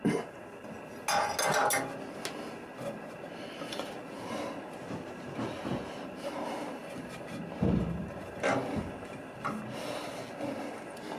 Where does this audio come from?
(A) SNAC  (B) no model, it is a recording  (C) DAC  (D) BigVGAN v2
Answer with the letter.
B